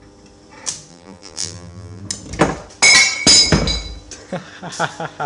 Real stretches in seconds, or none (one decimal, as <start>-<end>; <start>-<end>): 0.0-0.9; 2.0-5.3